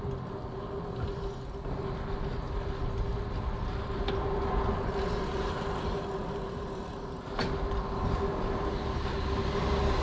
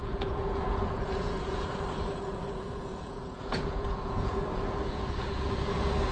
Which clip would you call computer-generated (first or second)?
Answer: second